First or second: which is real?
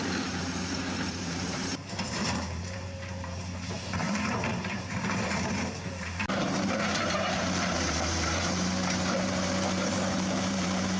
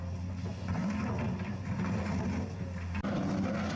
second